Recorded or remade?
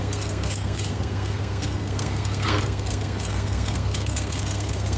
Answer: remade